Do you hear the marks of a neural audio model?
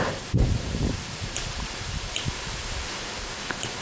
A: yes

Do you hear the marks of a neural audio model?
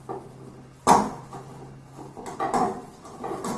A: no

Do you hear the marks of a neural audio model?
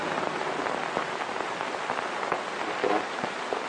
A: yes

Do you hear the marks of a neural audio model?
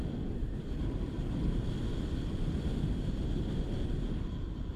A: yes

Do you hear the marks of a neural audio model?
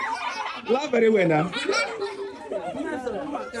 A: no